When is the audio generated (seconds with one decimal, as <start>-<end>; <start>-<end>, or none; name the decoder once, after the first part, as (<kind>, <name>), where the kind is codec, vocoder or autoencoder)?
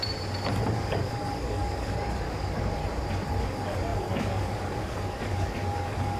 0.7-2.8 (codec, DAC); 3.4-6.2